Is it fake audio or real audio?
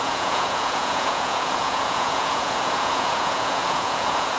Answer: fake